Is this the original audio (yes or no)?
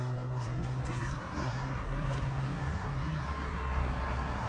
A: no